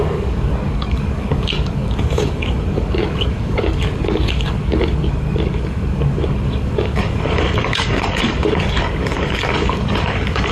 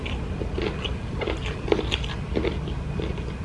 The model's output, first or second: first